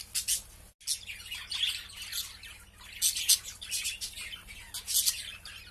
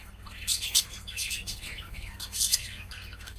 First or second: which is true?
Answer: first